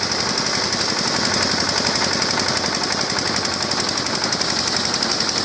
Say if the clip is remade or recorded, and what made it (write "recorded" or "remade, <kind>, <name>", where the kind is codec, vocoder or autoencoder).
recorded